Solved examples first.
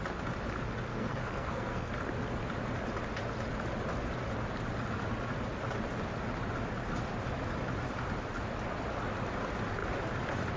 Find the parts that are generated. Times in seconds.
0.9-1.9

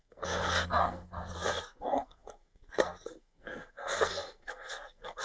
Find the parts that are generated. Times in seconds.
0.0-5.2

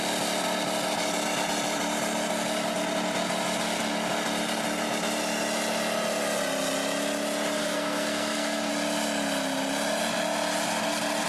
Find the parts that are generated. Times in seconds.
7.6-8.7

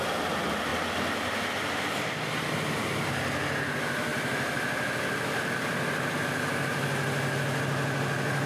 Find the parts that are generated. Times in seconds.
none

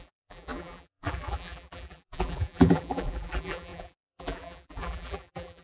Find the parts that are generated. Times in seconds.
0.0-5.6